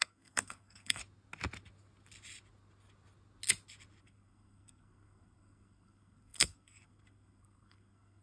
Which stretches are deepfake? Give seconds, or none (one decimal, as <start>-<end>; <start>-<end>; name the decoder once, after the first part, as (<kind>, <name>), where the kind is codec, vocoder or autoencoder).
0.0-1.0 (codec, SNAC); 4.0-8.2